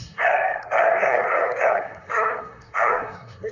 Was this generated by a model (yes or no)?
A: yes